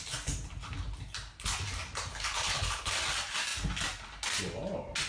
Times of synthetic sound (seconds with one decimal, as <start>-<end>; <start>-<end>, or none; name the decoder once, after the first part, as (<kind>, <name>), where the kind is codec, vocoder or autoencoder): 2.1-2.9 (codec, HILCodec)